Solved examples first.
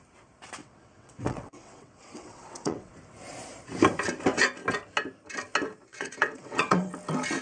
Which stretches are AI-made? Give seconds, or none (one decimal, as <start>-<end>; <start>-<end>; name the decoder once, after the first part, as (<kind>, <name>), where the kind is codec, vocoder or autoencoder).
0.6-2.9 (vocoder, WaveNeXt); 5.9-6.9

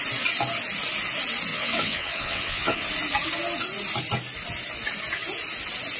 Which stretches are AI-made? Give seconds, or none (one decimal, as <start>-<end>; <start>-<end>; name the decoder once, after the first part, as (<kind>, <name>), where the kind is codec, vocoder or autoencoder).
1.5-2.9 (vocoder, WaveNeXt)

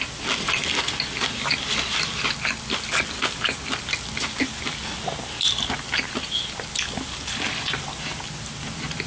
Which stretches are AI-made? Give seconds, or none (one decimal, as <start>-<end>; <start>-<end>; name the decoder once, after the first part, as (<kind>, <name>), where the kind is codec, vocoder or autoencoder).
none

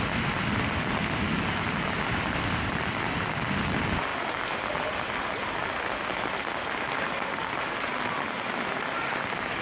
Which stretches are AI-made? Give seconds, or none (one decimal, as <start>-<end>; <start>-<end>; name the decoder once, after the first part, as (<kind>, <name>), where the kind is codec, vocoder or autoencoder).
none